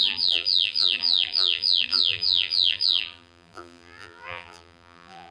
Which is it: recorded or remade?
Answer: remade